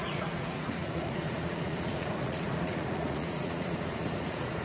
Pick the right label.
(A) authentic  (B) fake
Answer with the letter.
B